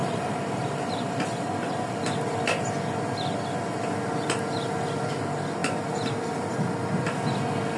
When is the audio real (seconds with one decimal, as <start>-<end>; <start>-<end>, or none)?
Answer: 2.0-7.8